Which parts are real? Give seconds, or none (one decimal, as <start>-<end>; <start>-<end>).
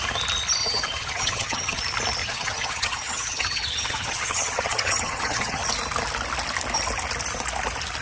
0.0-0.6; 1.8-2.2; 5.6-8.0